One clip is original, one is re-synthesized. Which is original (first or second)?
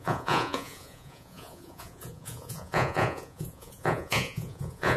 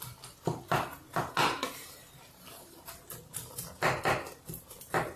second